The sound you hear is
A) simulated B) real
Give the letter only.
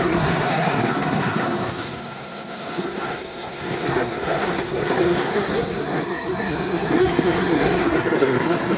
A